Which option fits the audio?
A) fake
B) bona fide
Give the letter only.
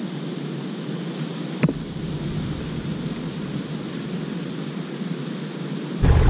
B